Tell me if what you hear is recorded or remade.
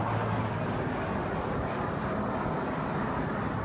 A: recorded